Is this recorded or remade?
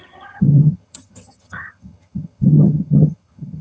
remade